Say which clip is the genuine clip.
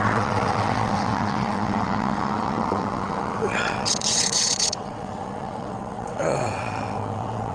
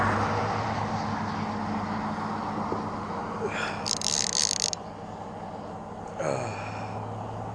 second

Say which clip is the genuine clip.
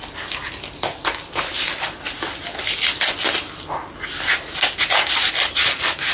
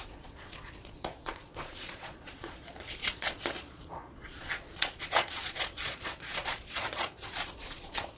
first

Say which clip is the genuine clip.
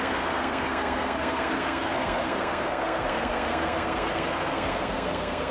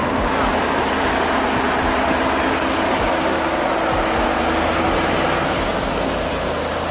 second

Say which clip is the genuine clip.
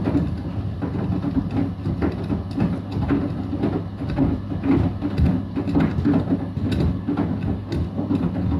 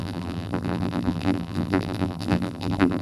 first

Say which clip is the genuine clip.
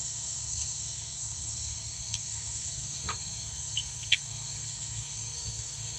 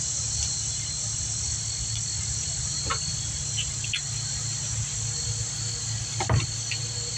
second